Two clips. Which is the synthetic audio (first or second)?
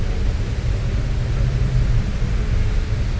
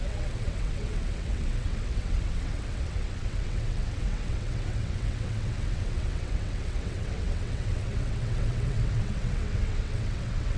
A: second